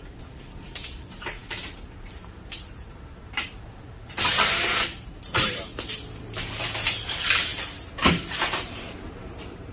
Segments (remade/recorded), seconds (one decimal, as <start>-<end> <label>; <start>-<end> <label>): 0.0-5.7 remade; 5.7-6.2 recorded; 6.2-9.7 remade